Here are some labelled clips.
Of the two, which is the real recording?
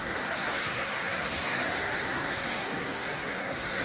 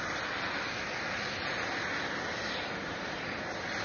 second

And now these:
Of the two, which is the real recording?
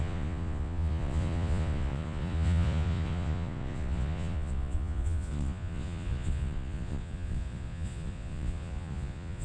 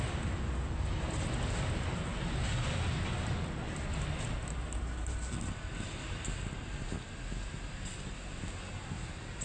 second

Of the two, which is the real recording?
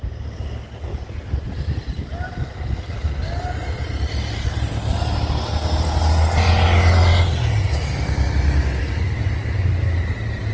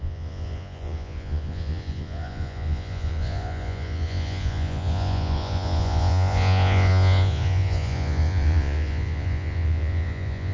first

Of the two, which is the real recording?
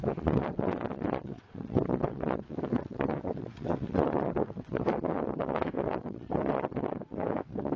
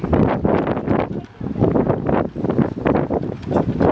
second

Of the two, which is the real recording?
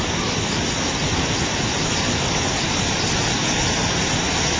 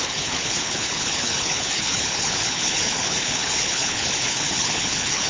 first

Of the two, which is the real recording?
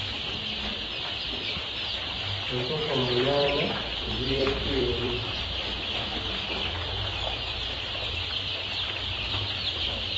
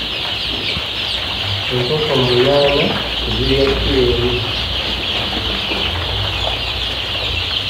second